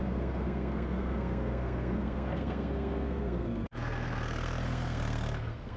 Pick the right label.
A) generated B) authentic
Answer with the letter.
A